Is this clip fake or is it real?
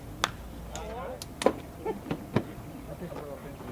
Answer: real